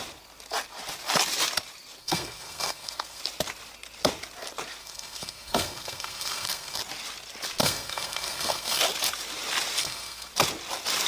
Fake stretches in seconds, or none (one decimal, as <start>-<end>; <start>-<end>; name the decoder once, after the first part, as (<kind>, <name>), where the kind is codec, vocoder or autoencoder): 2.0-3.2 (codec, SNAC); 4.8-6.8; 7.6-8.8; 9.8-10.3